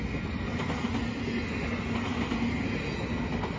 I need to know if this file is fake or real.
real